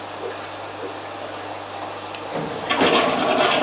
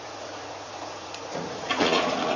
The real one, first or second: first